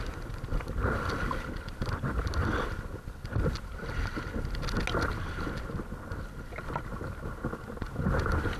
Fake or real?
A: real